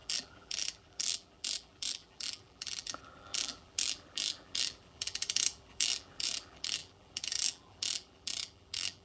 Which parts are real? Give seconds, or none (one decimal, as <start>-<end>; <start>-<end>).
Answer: none